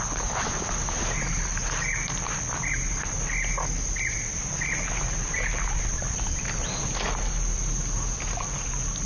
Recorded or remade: recorded